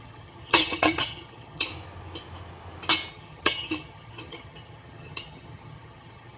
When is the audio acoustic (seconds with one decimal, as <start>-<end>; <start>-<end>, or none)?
1.7-3.1